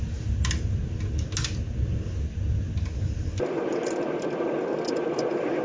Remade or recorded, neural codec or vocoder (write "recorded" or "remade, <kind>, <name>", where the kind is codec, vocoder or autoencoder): recorded